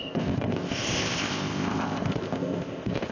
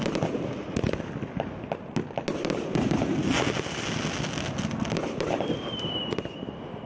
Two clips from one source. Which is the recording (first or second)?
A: second